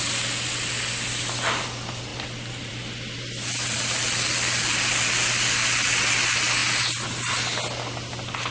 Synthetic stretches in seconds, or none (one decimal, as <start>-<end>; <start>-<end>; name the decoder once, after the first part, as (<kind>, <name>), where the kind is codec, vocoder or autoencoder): none